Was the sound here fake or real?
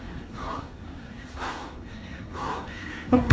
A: fake